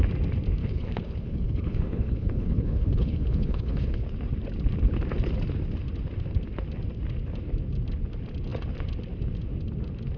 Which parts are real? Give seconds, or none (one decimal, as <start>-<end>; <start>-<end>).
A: 0.0-0.6; 4.0-10.2